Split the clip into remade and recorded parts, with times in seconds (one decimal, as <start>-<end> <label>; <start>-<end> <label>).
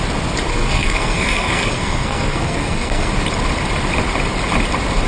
0.0-0.5 recorded; 0.5-3.1 remade; 3.1-5.1 recorded